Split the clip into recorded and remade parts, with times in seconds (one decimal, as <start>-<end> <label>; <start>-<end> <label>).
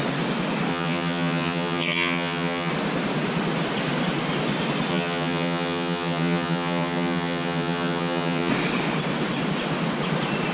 0.0-0.7 recorded; 0.7-2.7 remade; 2.7-4.9 recorded; 4.9-8.5 remade; 8.5-10.5 recorded